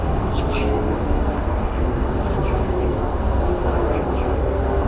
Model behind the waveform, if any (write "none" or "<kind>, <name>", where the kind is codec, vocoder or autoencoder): codec, SNAC